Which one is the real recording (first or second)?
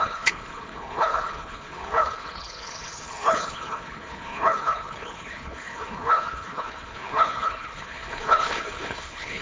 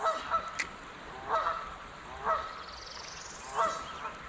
second